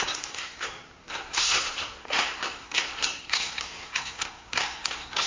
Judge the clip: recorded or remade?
remade